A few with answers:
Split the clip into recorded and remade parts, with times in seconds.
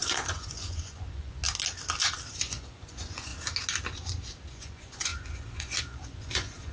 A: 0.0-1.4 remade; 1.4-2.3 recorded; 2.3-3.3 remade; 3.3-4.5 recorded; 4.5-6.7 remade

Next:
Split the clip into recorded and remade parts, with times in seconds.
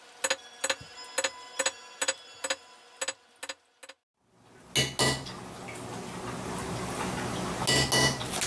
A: 0.0-8.5 recorded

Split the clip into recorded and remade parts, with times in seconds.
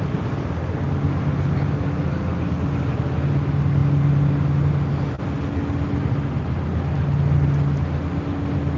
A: 0.0-8.8 recorded